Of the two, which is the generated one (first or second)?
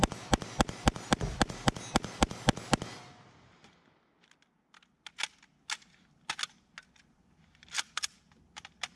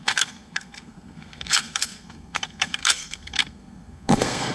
second